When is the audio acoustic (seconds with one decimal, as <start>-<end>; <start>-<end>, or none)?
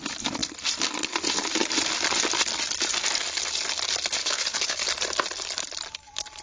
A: 0.0-4.2; 4.8-6.4